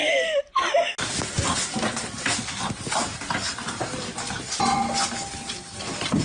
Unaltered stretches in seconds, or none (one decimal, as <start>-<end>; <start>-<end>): 0.0-6.2